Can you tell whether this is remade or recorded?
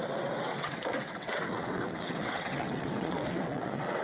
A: remade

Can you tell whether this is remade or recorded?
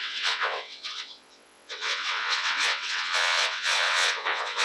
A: remade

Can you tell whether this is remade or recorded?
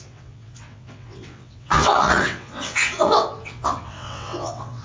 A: remade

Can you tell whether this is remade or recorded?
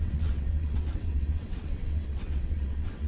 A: remade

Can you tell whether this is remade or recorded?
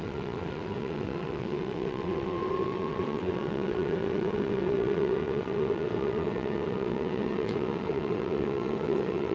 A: remade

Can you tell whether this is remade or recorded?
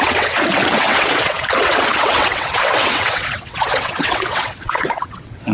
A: remade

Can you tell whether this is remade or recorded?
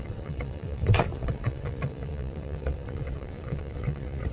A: remade